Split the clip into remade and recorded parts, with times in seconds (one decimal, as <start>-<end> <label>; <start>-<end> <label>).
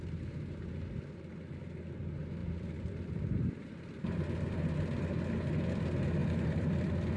0.0-2.4 recorded; 2.4-3.2 remade; 3.2-6.2 recorded; 6.2-7.2 remade